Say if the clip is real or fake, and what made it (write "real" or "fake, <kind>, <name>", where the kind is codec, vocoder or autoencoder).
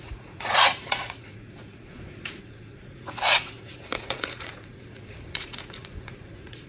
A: fake, vocoder, Vocos